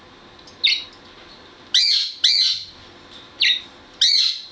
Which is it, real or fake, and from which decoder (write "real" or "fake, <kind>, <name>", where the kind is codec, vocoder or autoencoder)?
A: real